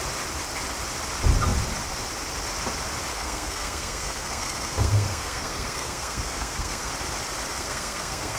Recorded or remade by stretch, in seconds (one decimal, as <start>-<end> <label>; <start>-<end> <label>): 0.0-3.1 recorded; 3.1-6.9 remade; 6.9-7.5 recorded; 7.5-8.4 remade